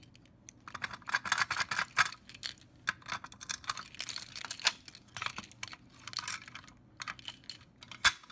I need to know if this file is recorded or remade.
recorded